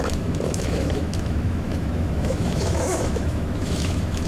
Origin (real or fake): fake